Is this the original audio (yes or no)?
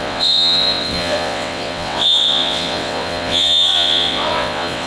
no